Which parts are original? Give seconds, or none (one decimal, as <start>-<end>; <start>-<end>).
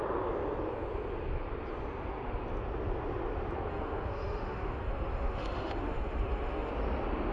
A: 0.0-3.7; 6.7-7.3